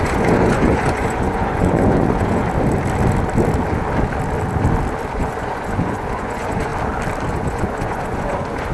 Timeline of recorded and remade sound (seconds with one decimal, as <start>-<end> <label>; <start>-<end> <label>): 0.0-2.4 remade; 2.4-5.1 recorded; 5.1-6.7 remade; 6.7-7.3 recorded; 7.3-8.7 remade